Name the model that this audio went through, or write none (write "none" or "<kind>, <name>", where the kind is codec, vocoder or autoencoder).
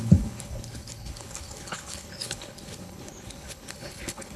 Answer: codec, HILCodec